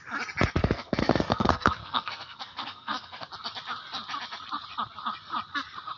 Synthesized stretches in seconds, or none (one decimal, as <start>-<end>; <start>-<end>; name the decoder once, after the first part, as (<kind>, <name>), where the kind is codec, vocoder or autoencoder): 0.6-3.3 (codec, SNAC)